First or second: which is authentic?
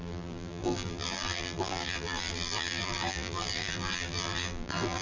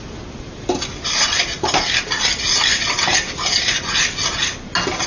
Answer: second